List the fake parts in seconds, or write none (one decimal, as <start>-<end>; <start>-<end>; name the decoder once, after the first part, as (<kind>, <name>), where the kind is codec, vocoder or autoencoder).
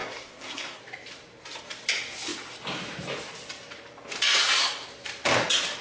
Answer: 0.0-0.8 (codec, SNAC)